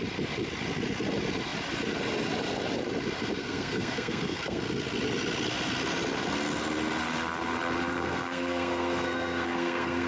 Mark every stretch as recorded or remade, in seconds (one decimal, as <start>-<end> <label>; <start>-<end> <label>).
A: 0.0-3.4 recorded; 3.4-4.6 remade; 4.6-7.9 recorded; 7.9-10.1 remade